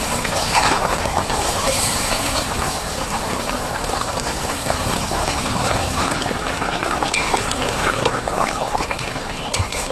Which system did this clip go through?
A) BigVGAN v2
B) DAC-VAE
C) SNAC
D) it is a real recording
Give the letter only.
C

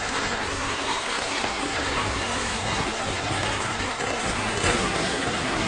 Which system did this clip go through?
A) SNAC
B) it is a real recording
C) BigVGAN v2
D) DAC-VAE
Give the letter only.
A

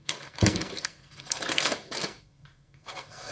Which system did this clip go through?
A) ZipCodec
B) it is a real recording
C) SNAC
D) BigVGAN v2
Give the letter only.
C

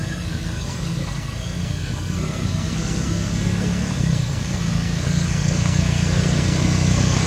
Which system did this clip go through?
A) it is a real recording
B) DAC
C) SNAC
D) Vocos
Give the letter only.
C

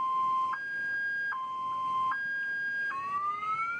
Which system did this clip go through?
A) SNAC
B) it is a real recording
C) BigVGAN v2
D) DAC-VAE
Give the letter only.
B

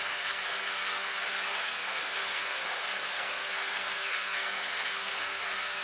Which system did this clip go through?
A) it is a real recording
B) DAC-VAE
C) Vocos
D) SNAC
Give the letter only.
D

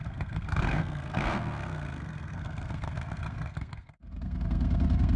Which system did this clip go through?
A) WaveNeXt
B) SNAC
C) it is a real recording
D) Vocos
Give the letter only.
B